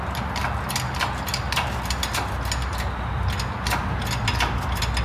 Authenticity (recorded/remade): recorded